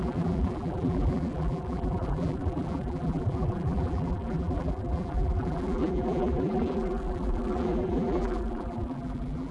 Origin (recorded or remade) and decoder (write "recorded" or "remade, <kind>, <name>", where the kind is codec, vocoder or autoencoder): remade, vocoder, BigVGAN v2